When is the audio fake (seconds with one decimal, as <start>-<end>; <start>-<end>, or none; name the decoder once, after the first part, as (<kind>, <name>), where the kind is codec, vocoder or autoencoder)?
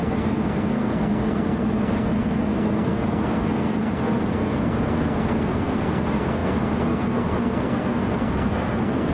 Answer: 0.0-9.1 (codec, SNAC)